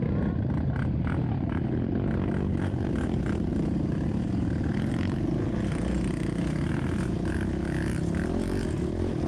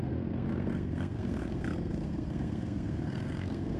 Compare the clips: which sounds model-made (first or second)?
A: second